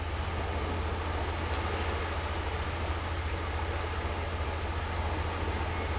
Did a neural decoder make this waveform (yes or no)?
no